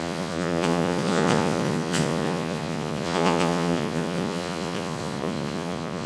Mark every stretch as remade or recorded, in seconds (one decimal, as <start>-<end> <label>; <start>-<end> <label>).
0.0-6.1 remade